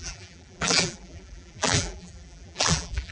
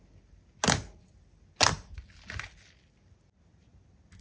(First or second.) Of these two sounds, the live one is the second